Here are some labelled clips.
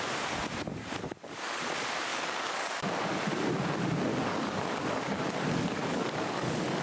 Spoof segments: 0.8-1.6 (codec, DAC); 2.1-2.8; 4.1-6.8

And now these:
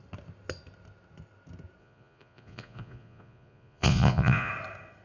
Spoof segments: 1.8-4.5 (vocoder, Vocos)